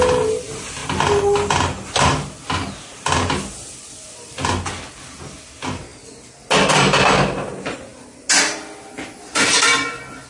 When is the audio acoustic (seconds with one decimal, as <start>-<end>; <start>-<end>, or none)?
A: 0.0-10.3